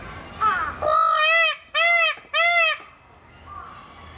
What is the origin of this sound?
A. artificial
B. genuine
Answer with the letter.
B